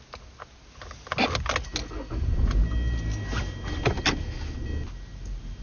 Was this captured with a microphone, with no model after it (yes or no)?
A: yes